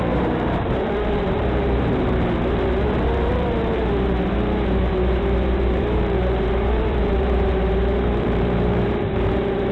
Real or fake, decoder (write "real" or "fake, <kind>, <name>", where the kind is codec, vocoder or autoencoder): fake, vocoder, BigVGAN v2